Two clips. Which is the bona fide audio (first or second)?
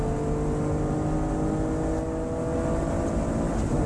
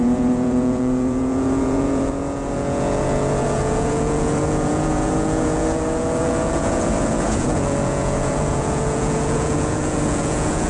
first